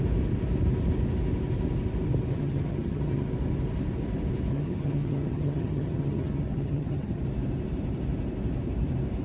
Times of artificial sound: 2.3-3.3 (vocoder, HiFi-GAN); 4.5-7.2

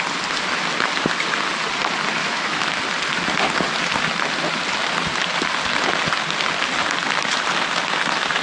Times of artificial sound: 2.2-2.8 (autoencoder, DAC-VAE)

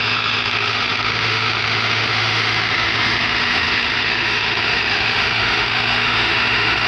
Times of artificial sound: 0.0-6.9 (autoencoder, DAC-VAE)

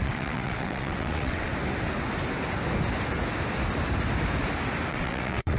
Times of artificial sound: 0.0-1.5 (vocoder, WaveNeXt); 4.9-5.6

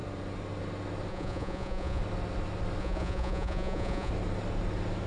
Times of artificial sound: 1.1-2.0 (vocoder, Vocos); 2.8-4.1

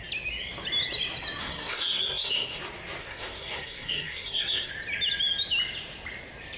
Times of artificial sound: 1.4-2.6 (codec, SNAC); 3.0-4.7